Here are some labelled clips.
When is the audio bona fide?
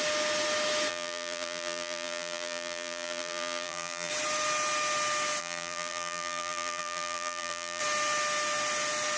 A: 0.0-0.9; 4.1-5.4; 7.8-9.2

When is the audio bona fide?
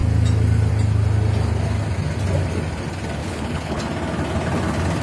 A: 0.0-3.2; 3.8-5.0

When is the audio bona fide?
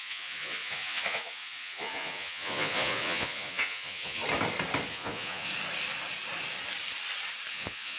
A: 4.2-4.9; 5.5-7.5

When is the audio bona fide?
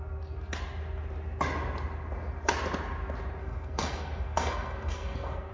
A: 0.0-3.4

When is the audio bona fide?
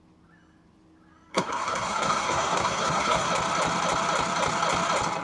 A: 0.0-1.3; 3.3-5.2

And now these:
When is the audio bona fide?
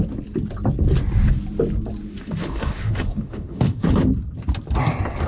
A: 0.0-2.1; 3.9-5.3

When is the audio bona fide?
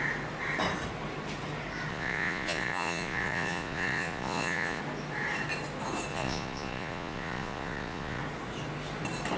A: 0.0-1.9; 4.8-6.1; 8.2-9.4